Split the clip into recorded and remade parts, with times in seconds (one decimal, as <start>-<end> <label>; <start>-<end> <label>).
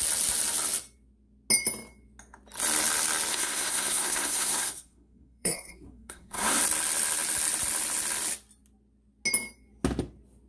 0.0-3.3 recorded; 3.3-6.6 remade; 6.6-10.5 recorded